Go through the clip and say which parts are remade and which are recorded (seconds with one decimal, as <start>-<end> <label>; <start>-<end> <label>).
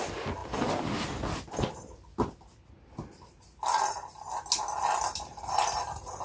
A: 0.0-6.2 recorded